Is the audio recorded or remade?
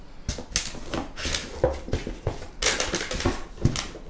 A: recorded